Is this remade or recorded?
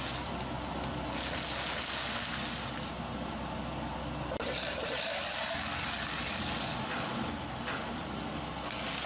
recorded